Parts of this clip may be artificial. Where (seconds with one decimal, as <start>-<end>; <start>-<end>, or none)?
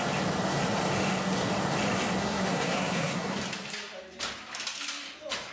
2.2-3.4